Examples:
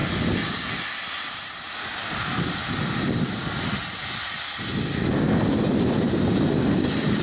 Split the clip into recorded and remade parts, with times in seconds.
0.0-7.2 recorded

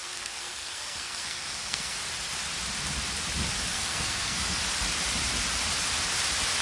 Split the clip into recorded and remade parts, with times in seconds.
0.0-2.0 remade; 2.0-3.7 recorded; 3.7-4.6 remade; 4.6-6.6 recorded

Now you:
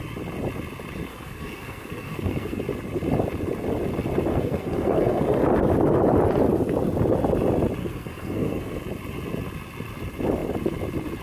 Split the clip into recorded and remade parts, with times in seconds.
0.0-1.1 recorded; 1.1-2.6 remade; 2.6-4.3 recorded; 4.3-5.2 remade; 5.2-7.8 recorded; 7.8-8.8 remade; 8.8-11.2 recorded

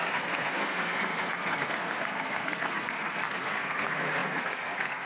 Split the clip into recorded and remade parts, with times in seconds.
0.0-5.1 remade

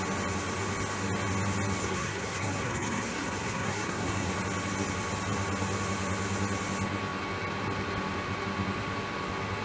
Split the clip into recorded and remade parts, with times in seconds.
0.0-1.8 recorded; 1.8-4.3 remade; 4.3-9.6 recorded

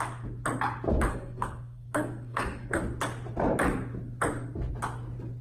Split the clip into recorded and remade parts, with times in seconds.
0.0-1.1 recorded; 1.1-2.8 remade; 2.8-5.4 recorded

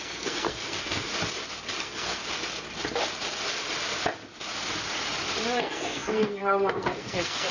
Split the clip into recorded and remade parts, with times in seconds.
0.0-1.1 remade; 1.1-1.8 recorded; 1.8-2.2 remade; 2.2-5.6 recorded; 5.6-7.5 remade